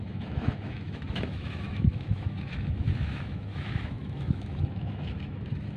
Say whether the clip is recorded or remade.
remade